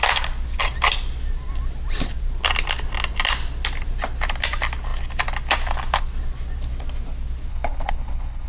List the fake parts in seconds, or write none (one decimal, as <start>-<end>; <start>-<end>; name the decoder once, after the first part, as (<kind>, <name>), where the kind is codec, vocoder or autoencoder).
7.5-8.5 (codec, HILCodec)